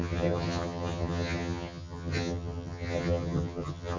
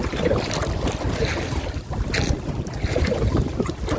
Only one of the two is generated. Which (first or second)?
first